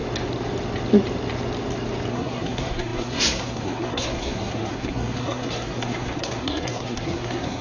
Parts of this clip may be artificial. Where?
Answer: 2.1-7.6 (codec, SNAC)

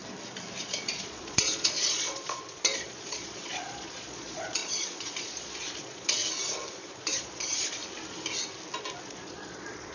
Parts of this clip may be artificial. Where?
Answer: 0.6-6.2 (vocoder, Vocos); 6.7-7.8; 9.0-9.9